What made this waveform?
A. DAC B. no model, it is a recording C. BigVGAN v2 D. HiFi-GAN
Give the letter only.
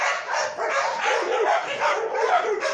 C